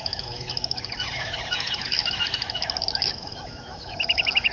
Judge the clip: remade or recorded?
remade